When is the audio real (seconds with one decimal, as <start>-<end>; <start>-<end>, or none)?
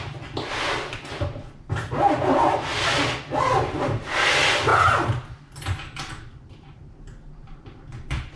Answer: 0.0-8.4